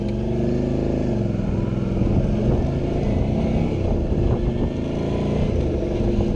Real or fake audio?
real